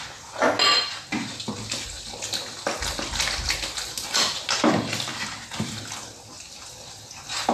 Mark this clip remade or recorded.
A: recorded